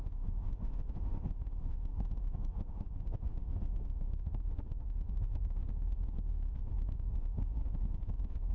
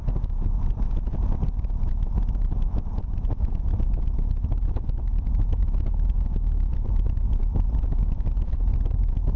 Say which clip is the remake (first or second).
first